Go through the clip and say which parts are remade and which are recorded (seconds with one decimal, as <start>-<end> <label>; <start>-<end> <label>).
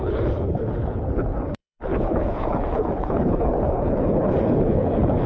0.0-5.3 remade